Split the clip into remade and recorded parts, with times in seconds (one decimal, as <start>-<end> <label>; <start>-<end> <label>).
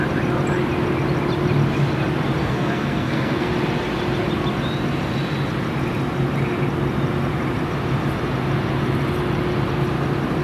0.0-2.4 recorded; 2.4-3.5 remade; 3.5-10.4 recorded